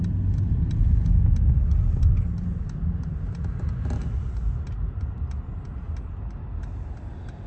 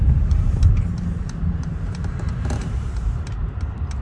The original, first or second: first